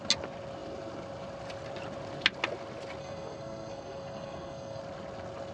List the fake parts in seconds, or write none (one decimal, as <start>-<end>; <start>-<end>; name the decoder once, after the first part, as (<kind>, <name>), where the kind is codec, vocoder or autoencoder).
3.0-4.8 (codec, SNAC)

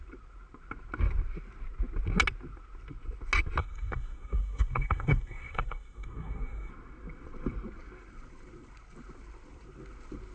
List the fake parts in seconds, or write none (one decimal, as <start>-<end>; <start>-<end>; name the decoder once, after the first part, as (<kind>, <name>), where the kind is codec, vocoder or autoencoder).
3.6-6.7 (codec, SNAC)

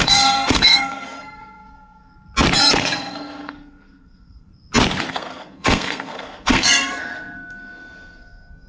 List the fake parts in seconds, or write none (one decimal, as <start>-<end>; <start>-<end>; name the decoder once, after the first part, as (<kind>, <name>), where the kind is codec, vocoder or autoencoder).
0.0-2.1 (codec, SNAC); 2.6-4.5; 5.1-8.7